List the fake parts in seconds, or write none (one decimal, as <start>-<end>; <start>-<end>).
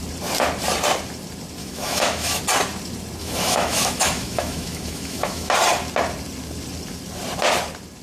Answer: 1.6-2.4; 3.2-5.5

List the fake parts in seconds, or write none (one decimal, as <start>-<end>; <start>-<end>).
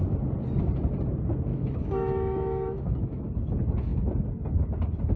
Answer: 1.5-3.3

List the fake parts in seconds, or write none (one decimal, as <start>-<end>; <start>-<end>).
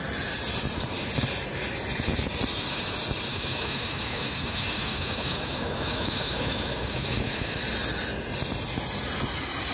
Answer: 3.3-7.6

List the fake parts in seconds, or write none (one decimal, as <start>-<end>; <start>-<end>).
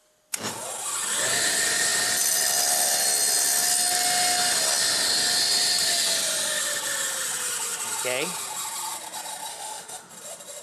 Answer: 9.5-10.1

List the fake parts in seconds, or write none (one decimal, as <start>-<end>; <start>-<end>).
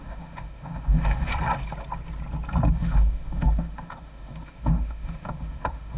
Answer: 0.0-1.3; 2.7-6.0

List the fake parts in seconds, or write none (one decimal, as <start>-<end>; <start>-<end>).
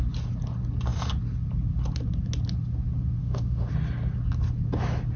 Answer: 3.2-3.7